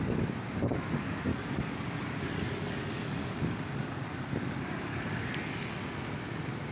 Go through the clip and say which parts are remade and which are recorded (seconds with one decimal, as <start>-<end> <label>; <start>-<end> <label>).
0.0-1.3 recorded; 1.3-5.3 remade; 5.3-6.7 recorded